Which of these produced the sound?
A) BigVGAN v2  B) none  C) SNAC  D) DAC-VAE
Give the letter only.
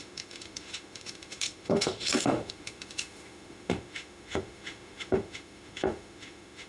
D